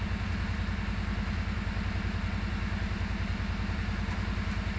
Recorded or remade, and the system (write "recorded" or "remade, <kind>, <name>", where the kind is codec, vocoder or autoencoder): recorded